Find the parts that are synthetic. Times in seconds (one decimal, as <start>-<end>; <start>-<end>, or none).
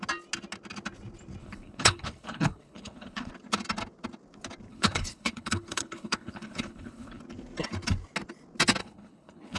1.4-3.3; 4.7-7.2; 8.8-9.6